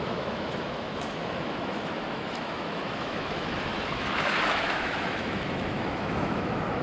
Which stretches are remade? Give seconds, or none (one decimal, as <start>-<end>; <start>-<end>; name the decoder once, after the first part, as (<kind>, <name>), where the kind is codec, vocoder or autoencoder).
0.0-6.8 (autoencoder, DAC-VAE)